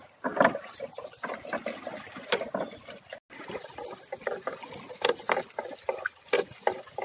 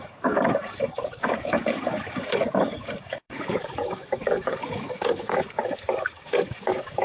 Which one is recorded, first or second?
first